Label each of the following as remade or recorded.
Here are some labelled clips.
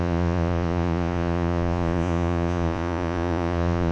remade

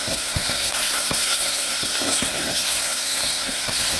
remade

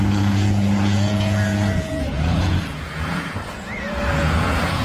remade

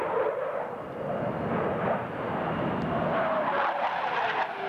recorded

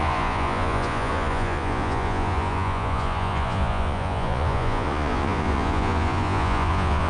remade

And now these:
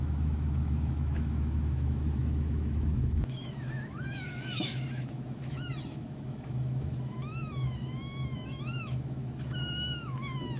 remade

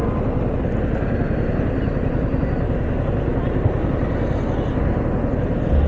recorded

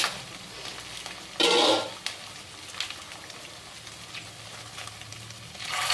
recorded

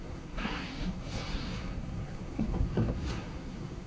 remade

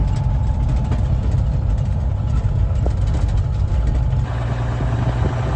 recorded